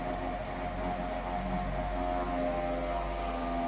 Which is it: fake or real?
real